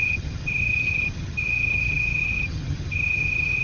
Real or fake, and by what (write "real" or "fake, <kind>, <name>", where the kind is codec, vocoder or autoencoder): fake, vocoder, HiFi-GAN